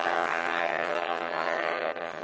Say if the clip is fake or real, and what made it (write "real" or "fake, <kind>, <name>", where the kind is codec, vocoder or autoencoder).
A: fake, vocoder, HiFi-GAN